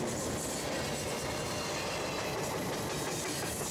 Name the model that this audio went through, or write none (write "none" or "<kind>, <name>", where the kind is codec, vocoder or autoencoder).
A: none